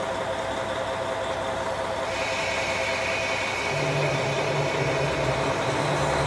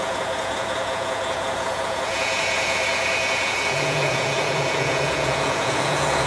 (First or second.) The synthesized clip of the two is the second